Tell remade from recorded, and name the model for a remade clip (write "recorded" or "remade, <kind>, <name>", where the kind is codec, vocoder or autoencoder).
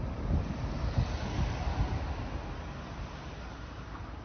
recorded